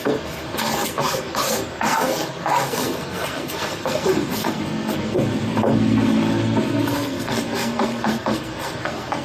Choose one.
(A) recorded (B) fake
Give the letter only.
B